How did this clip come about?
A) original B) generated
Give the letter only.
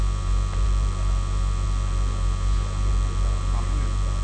A